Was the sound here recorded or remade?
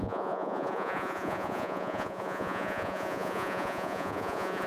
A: remade